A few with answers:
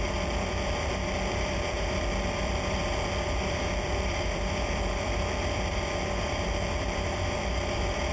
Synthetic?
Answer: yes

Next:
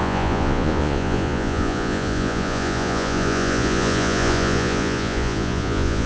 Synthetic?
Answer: yes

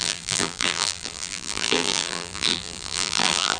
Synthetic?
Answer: yes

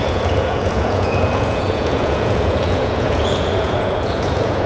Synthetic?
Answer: yes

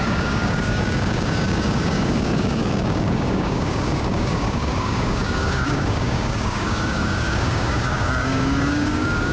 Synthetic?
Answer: yes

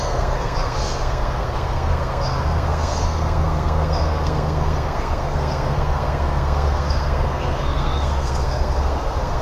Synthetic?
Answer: yes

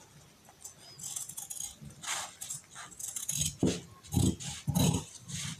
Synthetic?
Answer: no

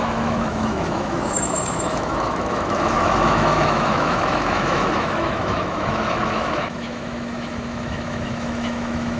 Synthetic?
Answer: yes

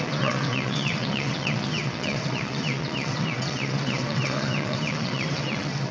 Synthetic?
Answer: yes